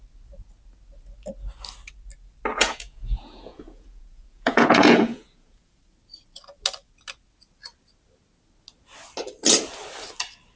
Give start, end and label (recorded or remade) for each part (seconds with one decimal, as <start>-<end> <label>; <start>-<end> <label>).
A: 0.0-2.5 recorded; 2.5-5.8 remade; 5.8-10.6 recorded